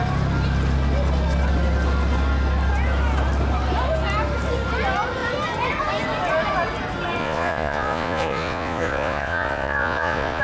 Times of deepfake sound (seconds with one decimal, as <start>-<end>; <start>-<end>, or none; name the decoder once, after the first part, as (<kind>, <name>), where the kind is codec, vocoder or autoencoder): 7.2-10.4 (vocoder, Vocos)